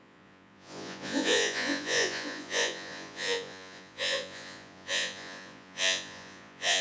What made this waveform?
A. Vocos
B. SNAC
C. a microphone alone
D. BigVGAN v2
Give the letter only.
A